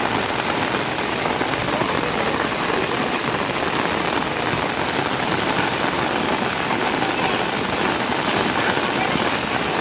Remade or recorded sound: recorded